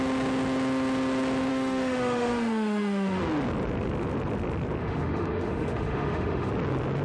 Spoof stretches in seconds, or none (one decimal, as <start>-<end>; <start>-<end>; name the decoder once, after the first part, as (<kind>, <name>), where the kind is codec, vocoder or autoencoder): 1.5-3.2 (autoencoder, DAC-VAE); 4.8-6.5